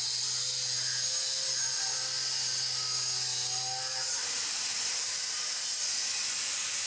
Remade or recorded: recorded